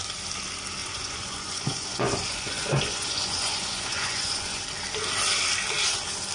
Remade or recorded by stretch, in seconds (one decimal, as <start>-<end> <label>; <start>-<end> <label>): 0.0-0.8 recorded; 0.8-4.6 remade; 4.6-6.3 recorded